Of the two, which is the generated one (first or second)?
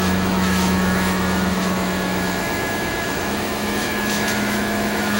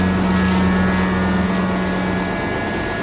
first